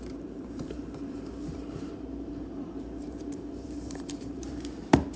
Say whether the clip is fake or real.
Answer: fake